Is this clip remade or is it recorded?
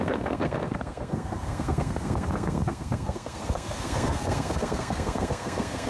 remade